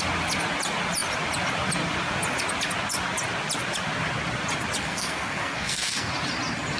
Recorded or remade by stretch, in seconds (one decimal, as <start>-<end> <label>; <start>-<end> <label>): 0.0-4.8 recorded; 4.8-6.1 remade; 6.1-6.8 recorded